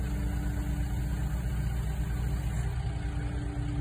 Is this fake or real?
real